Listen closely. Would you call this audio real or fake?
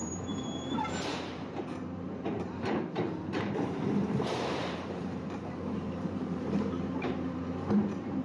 fake